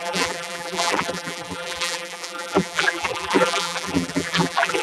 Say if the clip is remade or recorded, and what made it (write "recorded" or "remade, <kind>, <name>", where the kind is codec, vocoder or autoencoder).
remade, vocoder, BigVGAN v2